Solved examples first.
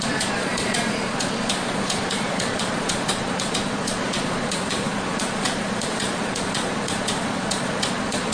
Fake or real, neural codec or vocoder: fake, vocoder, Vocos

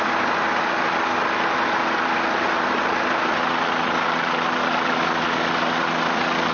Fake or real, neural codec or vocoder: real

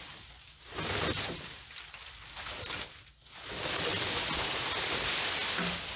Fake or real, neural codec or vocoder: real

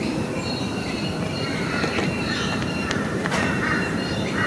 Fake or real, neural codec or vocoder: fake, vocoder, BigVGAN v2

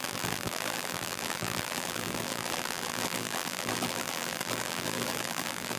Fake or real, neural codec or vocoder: fake, vocoder, BigVGAN v2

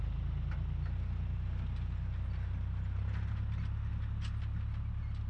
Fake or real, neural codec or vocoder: real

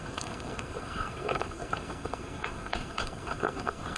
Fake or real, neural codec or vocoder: fake, codec, SNAC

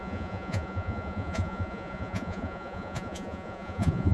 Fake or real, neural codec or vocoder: fake, vocoder, Vocos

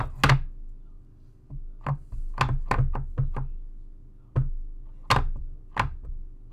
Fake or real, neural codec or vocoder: real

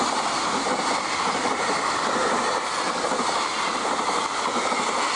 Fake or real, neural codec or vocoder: real